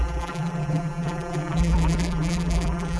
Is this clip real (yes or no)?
no